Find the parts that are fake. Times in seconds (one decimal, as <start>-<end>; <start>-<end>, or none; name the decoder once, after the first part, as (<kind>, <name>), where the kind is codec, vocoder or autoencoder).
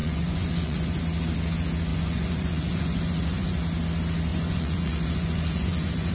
0.0-1.0 (vocoder, Vocos); 1.9-3.6; 4.3-6.1